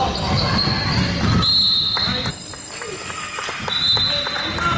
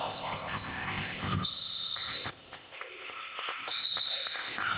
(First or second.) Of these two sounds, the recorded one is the first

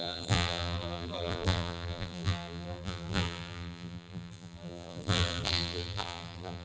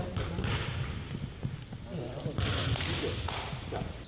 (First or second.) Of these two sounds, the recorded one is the second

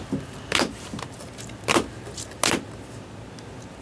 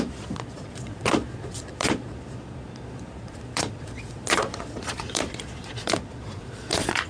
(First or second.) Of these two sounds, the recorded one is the first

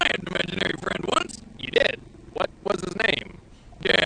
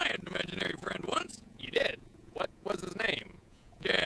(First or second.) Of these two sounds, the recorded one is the first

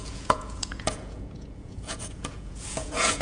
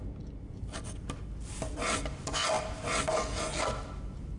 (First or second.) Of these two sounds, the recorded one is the second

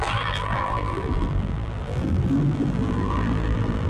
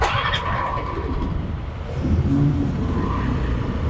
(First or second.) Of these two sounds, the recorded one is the second